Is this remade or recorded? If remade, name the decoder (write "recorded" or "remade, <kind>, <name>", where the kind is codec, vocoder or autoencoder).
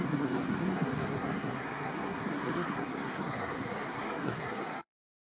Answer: remade, codec, SNAC